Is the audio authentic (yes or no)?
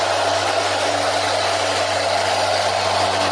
yes